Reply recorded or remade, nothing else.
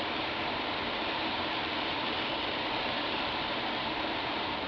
remade